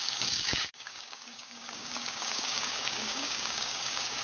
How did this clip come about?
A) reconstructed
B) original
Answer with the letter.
A